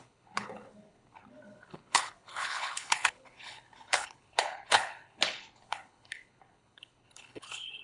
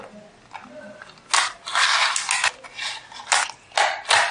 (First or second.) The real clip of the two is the second